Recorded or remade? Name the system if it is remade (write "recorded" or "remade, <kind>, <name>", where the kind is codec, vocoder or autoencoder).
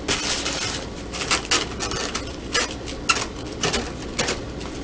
recorded